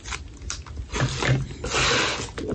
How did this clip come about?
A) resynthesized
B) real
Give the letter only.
B